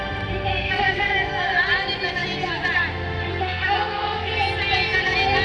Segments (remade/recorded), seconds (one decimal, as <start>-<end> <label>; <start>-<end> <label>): 0.0-0.5 recorded; 0.5-1.1 remade; 1.1-3.3 recorded; 3.3-4.3 remade; 4.3-5.4 recorded